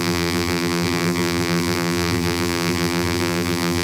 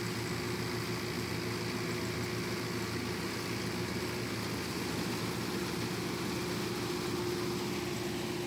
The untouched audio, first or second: second